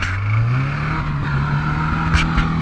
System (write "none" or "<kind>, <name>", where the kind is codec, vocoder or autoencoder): none